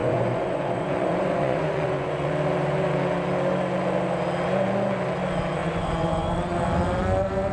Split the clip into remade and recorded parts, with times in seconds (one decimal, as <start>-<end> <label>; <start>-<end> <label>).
0.0-2.3 remade; 2.3-5.6 recorded; 5.6-6.4 remade; 6.4-7.5 recorded